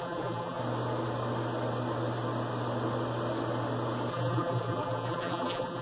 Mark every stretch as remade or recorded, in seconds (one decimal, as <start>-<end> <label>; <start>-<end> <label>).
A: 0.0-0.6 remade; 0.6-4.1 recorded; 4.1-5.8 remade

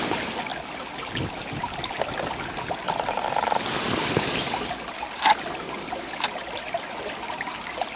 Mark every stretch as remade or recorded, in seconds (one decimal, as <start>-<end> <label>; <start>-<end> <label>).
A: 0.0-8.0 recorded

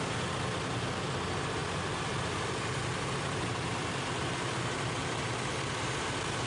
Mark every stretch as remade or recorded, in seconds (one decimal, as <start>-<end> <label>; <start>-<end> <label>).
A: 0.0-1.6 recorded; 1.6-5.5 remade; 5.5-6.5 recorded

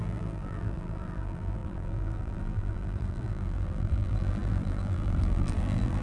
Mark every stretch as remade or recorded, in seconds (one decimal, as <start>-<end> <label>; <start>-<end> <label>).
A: 0.0-6.0 remade

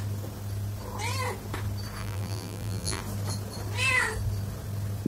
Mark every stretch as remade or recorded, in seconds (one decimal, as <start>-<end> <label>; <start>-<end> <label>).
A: 0.0-2.0 recorded; 2.0-3.0 remade; 3.0-5.1 recorded